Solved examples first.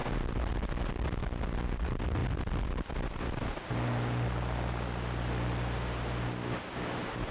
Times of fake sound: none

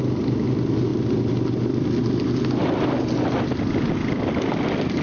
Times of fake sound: none